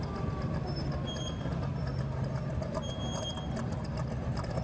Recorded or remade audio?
recorded